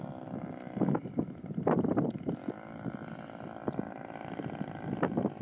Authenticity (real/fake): real